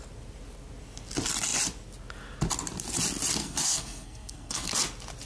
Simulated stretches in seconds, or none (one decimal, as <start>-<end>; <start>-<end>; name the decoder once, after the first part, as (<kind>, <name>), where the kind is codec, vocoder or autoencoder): 3.4-4.7 (codec, SNAC)